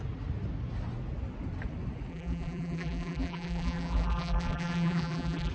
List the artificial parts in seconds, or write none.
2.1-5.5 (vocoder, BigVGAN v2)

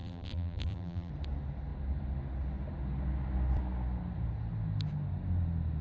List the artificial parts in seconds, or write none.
0.0-1.1 (vocoder, BigVGAN v2)

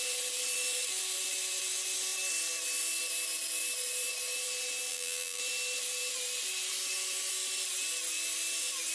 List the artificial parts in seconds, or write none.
4.9-5.4 (vocoder, BigVGAN v2)

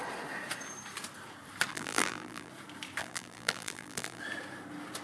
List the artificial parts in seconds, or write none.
1.7-2.5 (vocoder, BigVGAN v2); 3.0-4.2

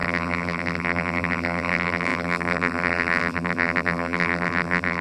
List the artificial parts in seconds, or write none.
0.0-5.0 (vocoder, BigVGAN v2)

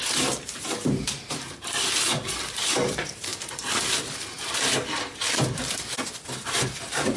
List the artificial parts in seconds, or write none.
0.0-3.3 (vocoder, BigVGAN v2); 6.4-7.2

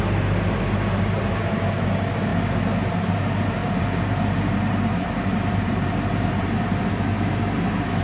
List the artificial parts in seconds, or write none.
3.6-6.9 (vocoder, BigVGAN v2)